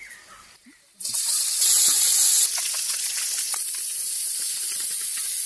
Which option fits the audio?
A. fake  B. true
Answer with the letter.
B